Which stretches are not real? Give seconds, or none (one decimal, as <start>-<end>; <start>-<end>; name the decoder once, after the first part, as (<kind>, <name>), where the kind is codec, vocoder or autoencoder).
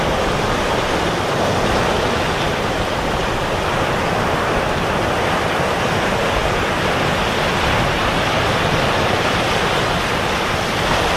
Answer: 6.4-9.6 (vocoder, BigVGAN v2)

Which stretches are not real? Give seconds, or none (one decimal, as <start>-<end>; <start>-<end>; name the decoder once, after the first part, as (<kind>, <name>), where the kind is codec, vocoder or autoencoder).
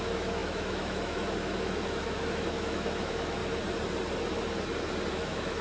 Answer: 0.0-3.4 (autoencoder, DAC-VAE); 5.1-5.6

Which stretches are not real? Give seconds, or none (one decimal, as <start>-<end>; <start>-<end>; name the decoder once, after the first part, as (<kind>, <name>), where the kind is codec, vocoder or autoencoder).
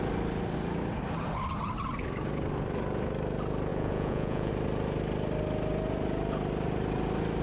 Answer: 3.7-4.5 (vocoder, Vocos)